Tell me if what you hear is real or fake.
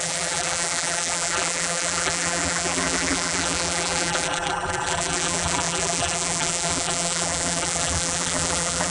fake